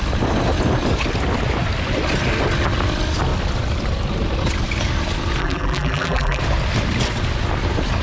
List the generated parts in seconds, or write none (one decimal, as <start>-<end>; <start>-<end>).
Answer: 5.4-6.4